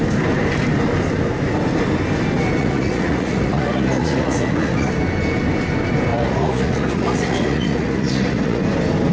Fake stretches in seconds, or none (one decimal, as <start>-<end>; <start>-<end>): 2.6-4.9; 6.1-8.6